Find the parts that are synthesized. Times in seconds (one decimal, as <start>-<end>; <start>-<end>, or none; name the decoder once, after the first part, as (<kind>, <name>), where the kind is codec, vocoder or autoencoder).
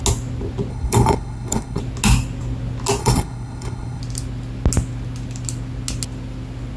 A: 0.7-1.8 (codec, HILCodec); 3.0-4.0